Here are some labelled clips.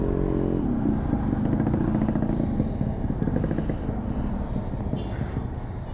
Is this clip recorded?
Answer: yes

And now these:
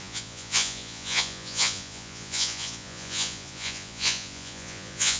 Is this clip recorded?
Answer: no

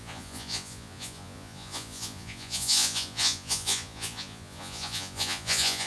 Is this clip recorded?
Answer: no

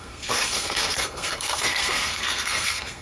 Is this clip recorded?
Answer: no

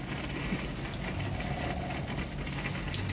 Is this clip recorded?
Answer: yes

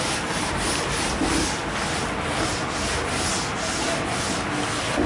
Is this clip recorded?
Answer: yes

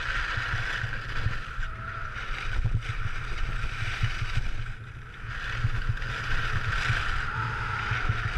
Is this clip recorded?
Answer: yes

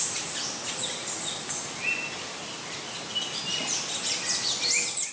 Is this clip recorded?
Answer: yes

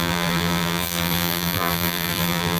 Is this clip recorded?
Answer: no